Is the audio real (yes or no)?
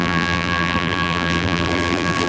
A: no